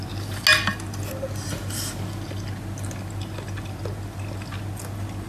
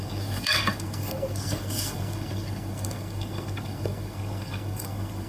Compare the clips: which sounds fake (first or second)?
second